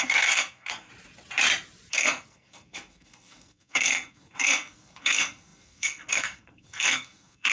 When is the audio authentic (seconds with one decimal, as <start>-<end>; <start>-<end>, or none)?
0.9-1.9